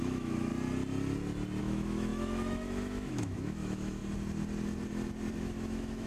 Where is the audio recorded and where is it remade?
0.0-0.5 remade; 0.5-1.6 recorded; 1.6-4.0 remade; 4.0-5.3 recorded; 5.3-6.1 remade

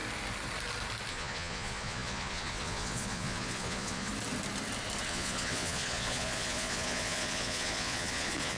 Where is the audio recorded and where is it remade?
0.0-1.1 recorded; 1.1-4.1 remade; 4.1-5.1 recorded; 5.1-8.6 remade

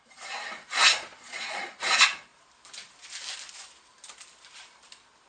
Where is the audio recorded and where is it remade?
0.0-0.9 recorded; 0.9-1.8 remade; 1.8-5.3 recorded

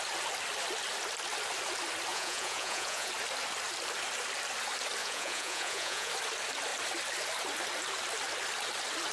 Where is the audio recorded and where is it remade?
0.0-2.1 recorded; 2.1-3.1 remade; 3.1-5.0 recorded; 5.0-6.1 remade; 6.1-9.1 recorded

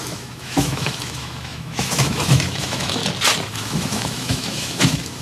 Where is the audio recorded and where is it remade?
0.0-3.0 remade; 3.0-3.5 recorded; 3.5-5.2 remade

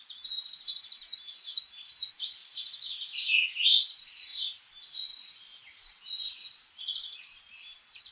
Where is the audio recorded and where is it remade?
0.0-8.1 recorded

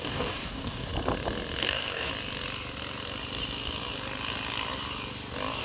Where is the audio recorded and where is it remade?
0.0-0.9 remade; 0.9-1.6 recorded; 1.6-2.1 remade; 2.1-5.6 recorded